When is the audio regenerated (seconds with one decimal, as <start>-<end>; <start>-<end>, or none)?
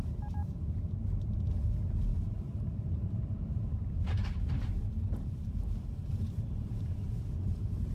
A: 0.0-7.9